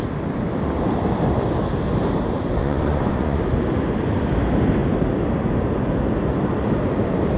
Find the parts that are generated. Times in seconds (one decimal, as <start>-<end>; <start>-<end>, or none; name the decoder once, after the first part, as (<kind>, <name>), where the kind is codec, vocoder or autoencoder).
2.6-3.4 (vocoder, Vocos)